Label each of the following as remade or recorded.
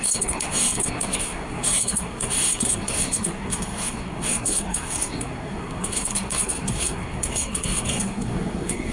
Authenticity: remade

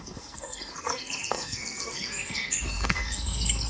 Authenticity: remade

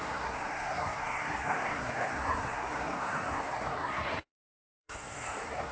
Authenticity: remade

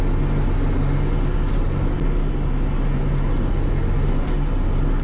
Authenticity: recorded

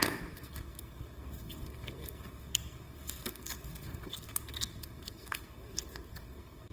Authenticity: remade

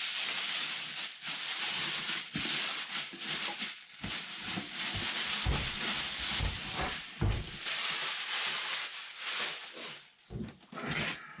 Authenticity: recorded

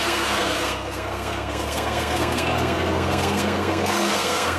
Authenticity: remade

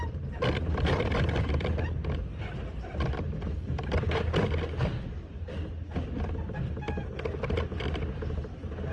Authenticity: recorded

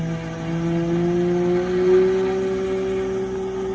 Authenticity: recorded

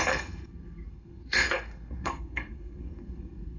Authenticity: remade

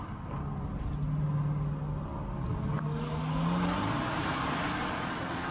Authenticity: recorded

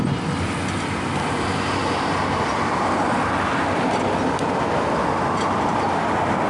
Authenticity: recorded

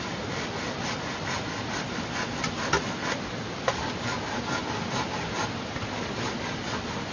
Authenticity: recorded